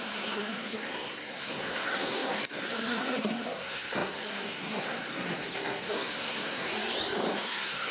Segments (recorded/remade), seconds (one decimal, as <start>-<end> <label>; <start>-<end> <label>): 0.0-6.7 remade; 6.7-7.3 recorded; 7.3-7.9 remade